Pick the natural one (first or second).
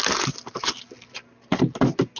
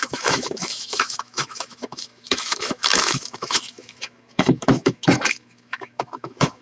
first